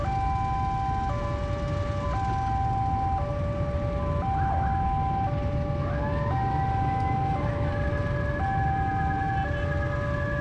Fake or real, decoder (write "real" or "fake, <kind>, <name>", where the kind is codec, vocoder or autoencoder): real